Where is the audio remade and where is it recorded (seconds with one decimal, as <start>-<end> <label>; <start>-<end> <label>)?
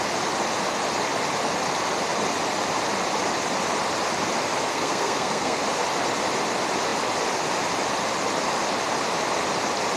0.0-4.7 recorded; 4.7-5.6 remade; 5.6-10.0 recorded